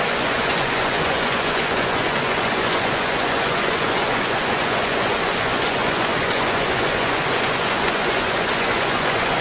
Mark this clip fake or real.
fake